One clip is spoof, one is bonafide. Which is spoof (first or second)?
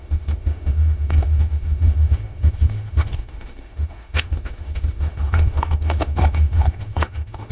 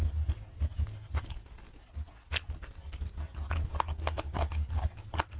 first